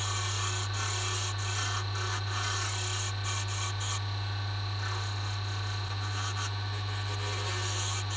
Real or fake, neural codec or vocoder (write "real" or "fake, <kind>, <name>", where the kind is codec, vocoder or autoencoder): real